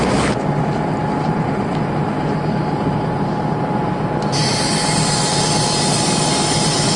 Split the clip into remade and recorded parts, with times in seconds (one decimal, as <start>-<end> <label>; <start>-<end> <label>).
0.0-1.0 recorded; 1.0-3.3 remade; 3.3-4.4 recorded; 4.4-5.2 remade; 5.2-7.0 recorded